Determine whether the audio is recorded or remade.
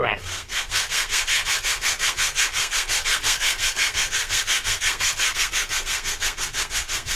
remade